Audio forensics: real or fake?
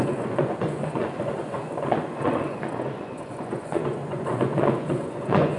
fake